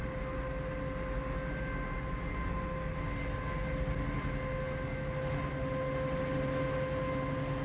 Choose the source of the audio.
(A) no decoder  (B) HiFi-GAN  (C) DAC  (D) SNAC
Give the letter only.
A